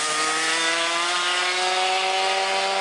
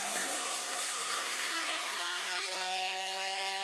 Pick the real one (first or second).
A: first